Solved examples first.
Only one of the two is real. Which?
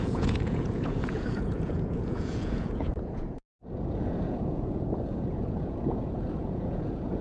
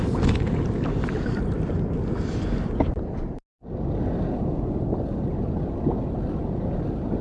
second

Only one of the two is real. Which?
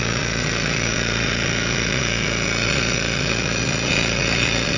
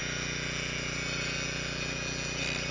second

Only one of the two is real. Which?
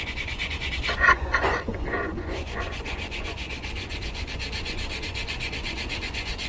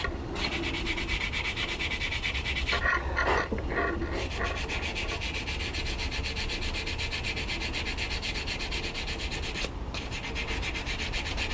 second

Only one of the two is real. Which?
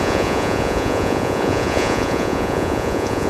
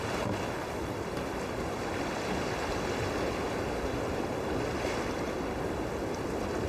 second